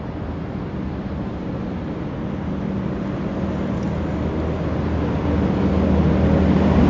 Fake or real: real